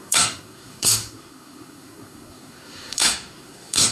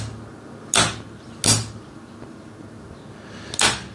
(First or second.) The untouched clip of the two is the second